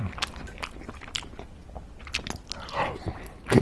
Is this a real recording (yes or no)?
yes